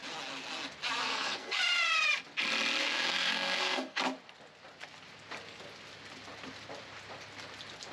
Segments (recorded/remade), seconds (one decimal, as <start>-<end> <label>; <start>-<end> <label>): 0.0-1.0 recorded; 1.0-1.6 remade; 1.6-2.8 recorded; 2.8-4.0 remade; 4.0-7.9 recorded